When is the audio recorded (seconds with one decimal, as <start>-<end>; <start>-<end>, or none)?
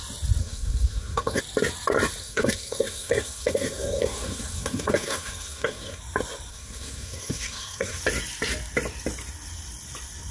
0.0-0.4; 1.4-2.2; 6.0-6.5; 8.0-10.3